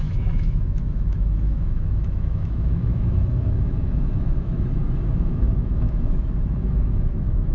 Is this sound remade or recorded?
remade